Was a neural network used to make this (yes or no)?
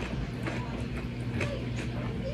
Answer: no